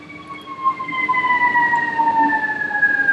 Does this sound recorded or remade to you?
recorded